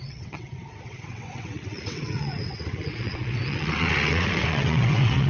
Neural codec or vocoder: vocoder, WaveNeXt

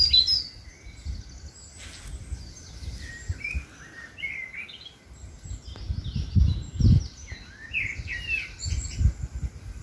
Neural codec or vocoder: none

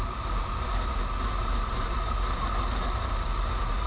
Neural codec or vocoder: none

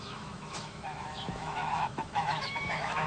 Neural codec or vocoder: autoencoder, DAC-VAE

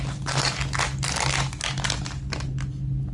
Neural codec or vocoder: none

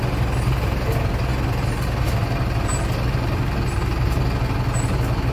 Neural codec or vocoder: none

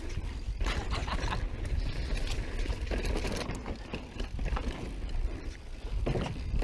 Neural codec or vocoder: none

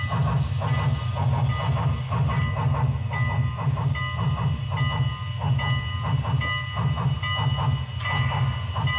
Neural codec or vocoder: none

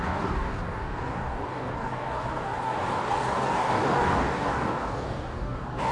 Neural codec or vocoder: codec, DAC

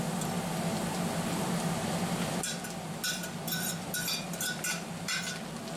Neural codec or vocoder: none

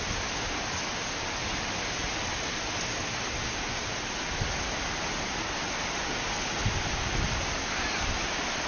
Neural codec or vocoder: none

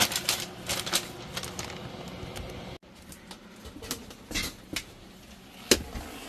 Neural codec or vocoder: none